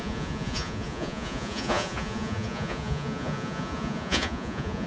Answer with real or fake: fake